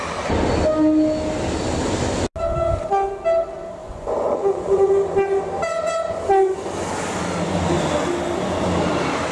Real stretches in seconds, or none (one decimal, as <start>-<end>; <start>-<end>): 0.0-3.8; 4.9-9.3